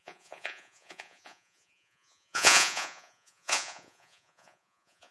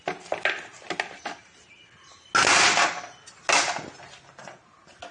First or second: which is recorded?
second